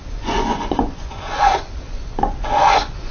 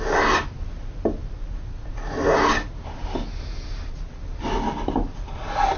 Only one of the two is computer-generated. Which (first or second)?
first